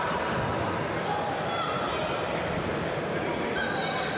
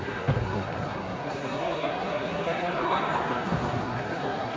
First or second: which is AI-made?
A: second